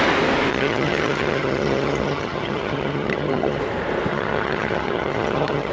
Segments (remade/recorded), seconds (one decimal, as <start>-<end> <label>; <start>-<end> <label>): 0.0-0.5 recorded; 0.5-3.6 remade; 3.6-4.1 recorded; 4.1-5.7 remade